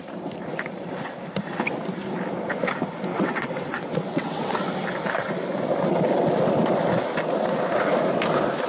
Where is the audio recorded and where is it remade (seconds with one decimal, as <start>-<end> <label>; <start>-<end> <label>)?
0.0-3.1 recorded; 3.1-4.5 remade; 4.5-8.7 recorded